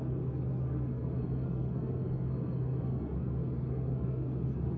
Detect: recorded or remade remade